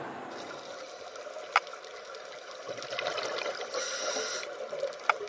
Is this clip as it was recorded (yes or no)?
yes